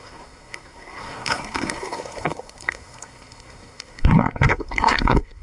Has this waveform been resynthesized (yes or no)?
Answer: yes